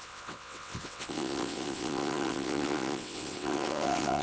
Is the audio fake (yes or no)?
yes